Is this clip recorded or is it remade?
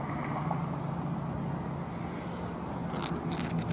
recorded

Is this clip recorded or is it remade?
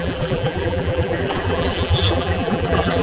remade